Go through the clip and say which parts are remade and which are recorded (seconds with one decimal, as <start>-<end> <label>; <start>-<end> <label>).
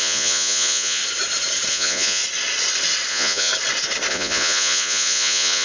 0.0-1.0 remade; 1.0-1.7 recorded; 1.7-2.2 remade; 2.2-3.1 recorded; 3.1-3.5 remade; 3.5-4.1 recorded; 4.1-5.6 remade